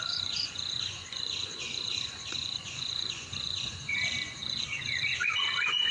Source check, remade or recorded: remade